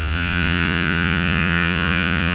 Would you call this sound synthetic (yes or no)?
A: yes